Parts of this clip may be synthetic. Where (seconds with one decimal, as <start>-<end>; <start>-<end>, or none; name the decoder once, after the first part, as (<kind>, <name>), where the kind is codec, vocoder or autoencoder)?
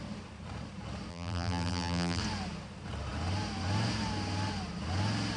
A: 1.1-2.2 (vocoder, BigVGAN v2)